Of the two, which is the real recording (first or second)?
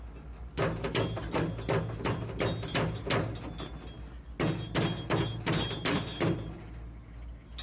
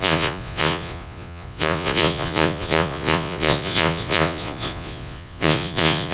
first